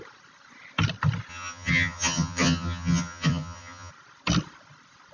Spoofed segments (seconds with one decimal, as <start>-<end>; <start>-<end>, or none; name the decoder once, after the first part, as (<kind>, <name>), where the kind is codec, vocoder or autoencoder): 1.3-3.9 (vocoder, HiFi-GAN)

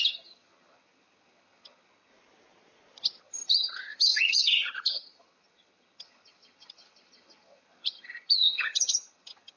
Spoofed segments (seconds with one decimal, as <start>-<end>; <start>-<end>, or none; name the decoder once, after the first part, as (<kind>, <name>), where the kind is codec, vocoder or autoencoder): 0.0-2.1 (vocoder, HiFi-GAN); 3.2-9.6

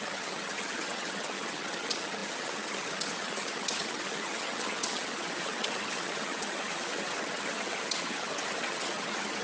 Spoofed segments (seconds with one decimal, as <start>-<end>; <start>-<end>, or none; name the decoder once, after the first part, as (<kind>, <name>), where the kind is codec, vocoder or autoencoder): 0.0-9.4 (vocoder, HiFi-GAN)